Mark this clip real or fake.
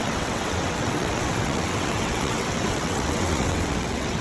fake